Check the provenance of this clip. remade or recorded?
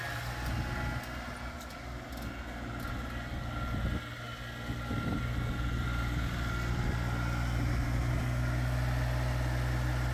recorded